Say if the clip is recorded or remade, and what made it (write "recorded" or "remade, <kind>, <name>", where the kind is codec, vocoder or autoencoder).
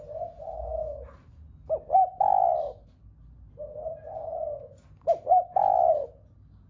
recorded